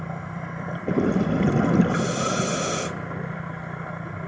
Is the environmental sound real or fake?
real